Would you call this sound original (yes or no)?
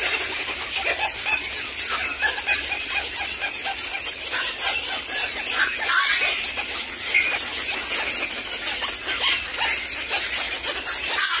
yes